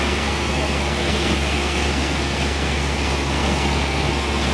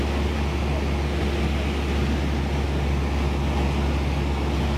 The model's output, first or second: first